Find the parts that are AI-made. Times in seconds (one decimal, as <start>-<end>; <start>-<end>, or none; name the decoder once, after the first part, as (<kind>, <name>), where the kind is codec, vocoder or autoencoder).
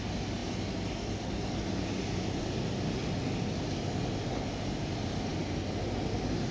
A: none